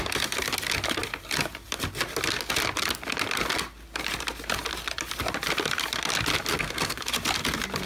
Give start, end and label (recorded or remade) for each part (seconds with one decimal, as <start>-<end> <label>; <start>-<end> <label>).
0.0-6.5 recorded; 6.5-7.0 remade; 7.0-7.9 recorded